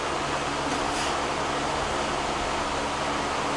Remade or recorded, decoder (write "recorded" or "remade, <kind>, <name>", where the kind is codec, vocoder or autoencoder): recorded